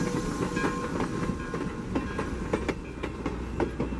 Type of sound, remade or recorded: recorded